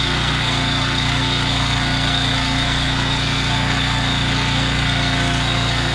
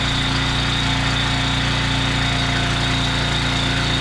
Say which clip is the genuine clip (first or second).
second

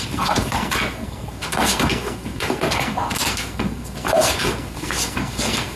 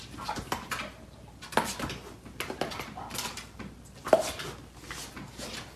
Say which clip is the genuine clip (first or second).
second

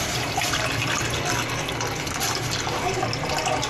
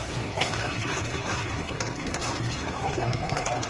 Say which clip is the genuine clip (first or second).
first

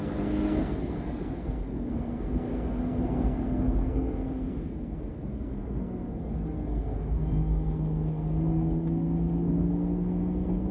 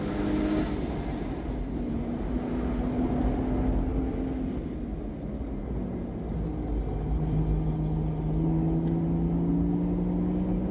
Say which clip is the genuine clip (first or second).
second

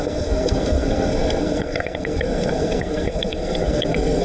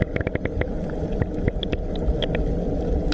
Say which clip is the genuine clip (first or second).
second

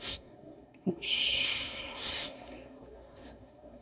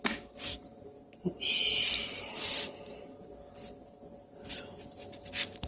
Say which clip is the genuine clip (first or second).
second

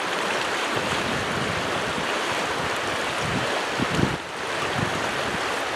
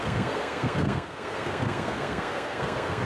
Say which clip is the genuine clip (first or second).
first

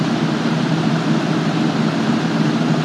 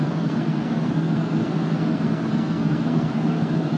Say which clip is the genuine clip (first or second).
first